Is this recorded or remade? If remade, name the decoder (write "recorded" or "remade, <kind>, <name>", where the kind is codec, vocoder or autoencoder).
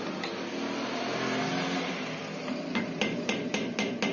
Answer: recorded